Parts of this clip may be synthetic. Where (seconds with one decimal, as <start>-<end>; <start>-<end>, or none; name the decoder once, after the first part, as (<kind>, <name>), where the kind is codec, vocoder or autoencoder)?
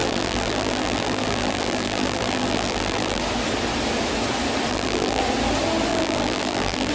0.0-3.2 (vocoder, BigVGAN v2); 4.7-5.2; 5.9-6.9